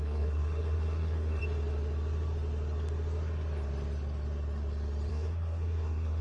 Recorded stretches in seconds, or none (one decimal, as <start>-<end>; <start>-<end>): 1.4-5.1